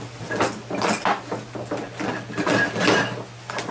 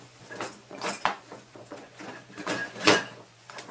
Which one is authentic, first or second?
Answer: first